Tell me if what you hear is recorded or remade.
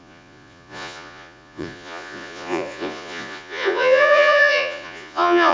remade